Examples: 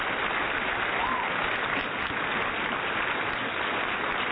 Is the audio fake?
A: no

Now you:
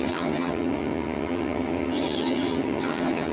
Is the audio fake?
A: yes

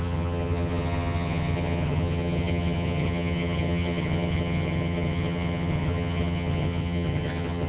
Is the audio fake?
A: yes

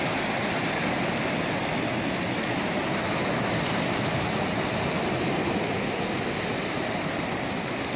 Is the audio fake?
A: no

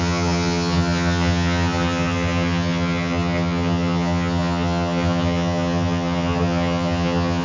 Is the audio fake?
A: yes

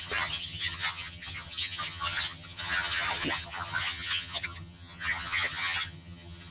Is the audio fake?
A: yes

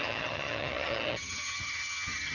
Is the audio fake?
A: yes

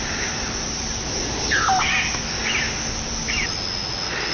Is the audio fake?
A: no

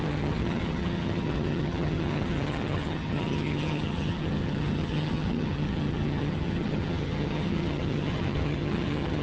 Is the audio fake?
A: yes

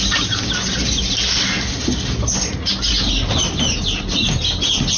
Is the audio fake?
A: no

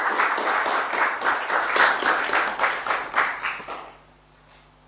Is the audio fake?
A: no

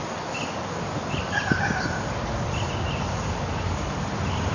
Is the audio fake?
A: no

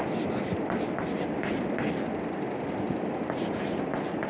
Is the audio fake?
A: no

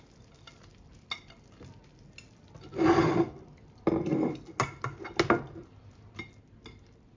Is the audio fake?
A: no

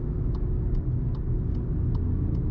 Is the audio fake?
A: no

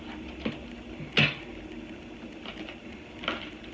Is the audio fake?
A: no